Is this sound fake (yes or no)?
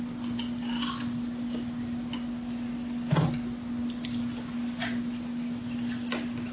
no